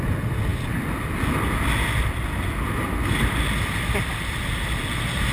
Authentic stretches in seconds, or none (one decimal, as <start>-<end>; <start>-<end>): 0.0-0.5; 1.1-3.2; 4.1-5.3